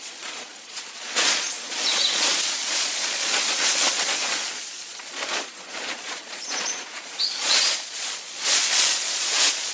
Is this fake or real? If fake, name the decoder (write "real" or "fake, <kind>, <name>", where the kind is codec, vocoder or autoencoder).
fake, vocoder, Vocos